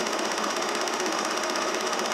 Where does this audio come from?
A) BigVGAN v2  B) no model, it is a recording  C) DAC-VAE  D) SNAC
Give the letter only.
C